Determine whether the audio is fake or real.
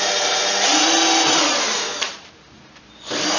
real